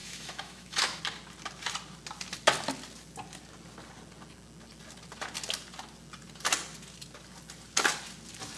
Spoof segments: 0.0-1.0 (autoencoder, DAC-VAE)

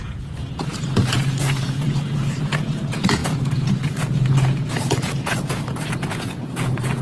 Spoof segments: 0.0-7.0 (vocoder, Vocos)

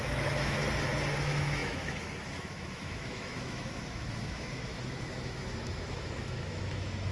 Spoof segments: 0.0-0.6 (autoencoder, DAC-VAE); 1.2-7.1

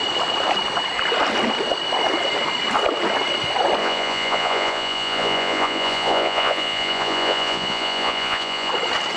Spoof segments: 3.8-8.7 (vocoder, Vocos)

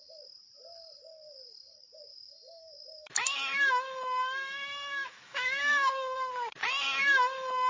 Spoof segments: 2.1-6.3 (autoencoder, DAC-VAE); 7.0-7.7

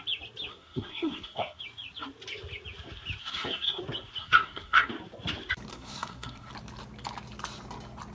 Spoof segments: 0.5-1.6 (codec, SNAC); 3.2-3.8; 4.2-4.9; 5.7-6.5

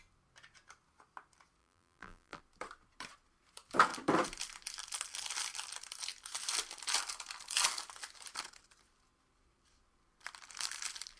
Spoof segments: 1.6-2.4 (vocoder, BigVGAN v2)